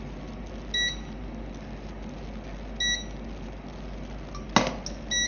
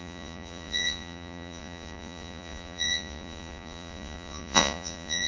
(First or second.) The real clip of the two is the first